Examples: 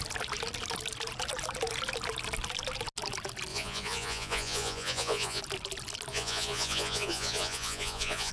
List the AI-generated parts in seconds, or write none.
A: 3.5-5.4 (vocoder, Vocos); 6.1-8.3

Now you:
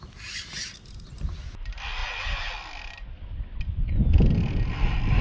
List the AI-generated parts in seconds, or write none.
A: none

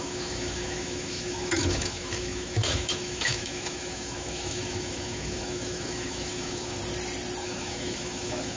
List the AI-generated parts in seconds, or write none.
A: 0.0-6.8 (autoencoder, DAC-VAE); 7.4-8.6

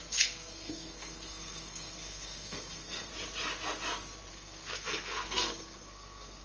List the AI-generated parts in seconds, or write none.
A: 0.0-3.1 (codec, SNAC); 4.3-6.4